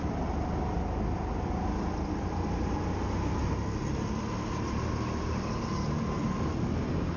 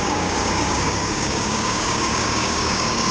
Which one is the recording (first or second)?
first